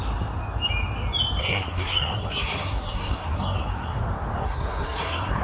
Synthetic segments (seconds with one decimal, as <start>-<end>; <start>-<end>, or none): 1.4-4.0; 4.4-5.4